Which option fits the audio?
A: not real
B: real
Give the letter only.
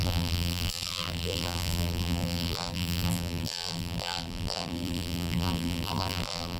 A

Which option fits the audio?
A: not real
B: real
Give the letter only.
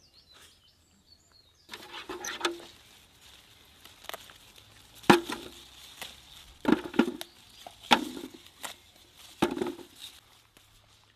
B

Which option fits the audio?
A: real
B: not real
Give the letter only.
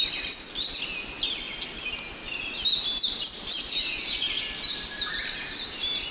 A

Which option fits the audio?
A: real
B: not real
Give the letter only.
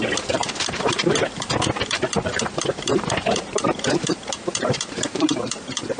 B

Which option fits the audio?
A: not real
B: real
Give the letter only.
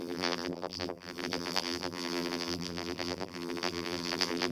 A